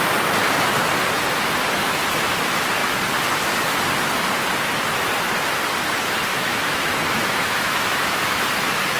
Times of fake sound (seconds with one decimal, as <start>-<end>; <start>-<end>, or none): 6.3-8.5